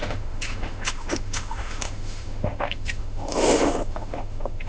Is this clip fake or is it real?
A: fake